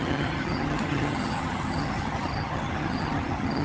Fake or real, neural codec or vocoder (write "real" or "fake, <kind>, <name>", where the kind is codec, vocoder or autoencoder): fake, vocoder, HiFi-GAN